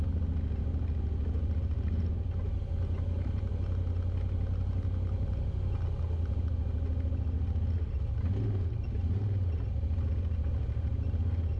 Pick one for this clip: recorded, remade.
recorded